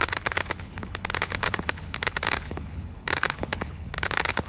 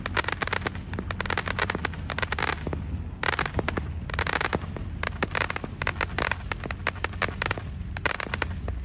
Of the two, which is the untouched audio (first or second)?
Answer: second